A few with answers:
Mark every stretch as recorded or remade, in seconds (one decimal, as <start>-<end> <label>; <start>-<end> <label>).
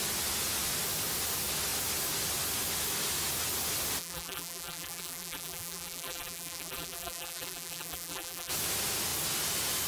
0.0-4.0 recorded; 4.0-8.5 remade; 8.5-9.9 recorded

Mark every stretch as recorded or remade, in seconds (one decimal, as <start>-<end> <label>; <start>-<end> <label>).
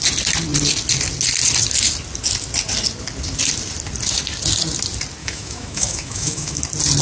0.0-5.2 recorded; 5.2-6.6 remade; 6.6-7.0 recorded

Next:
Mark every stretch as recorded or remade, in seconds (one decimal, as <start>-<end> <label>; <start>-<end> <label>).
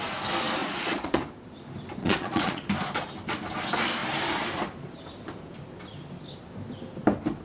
0.0-0.6 recorded; 0.6-1.2 remade; 1.2-2.0 recorded; 2.0-2.7 remade; 2.7-7.4 recorded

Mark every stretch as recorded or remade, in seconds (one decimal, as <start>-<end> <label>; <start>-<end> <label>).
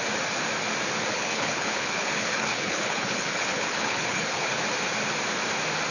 0.0-1.1 recorded; 1.1-4.6 remade; 4.6-5.9 recorded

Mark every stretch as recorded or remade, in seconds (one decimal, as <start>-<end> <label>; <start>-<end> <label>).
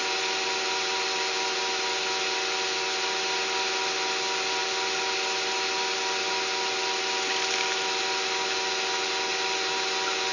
0.0-10.3 recorded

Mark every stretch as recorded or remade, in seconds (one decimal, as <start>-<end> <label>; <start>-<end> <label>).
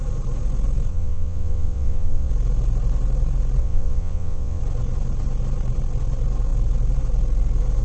0.0-0.9 recorded; 0.9-2.3 remade; 2.3-3.6 recorded; 3.6-4.6 remade; 4.6-7.8 recorded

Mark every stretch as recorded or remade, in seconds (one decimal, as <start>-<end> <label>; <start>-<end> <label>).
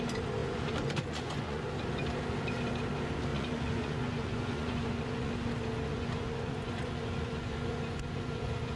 0.0-0.4 recorded; 0.4-1.6 remade; 1.6-3.3 recorded; 3.3-5.3 remade; 5.3-5.9 recorded; 5.9-8.8 remade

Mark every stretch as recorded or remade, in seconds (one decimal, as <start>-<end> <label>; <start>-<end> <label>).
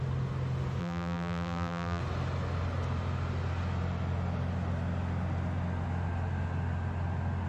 0.0-0.8 recorded; 0.8-2.0 remade; 2.0-7.5 recorded